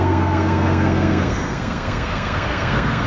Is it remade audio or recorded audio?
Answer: remade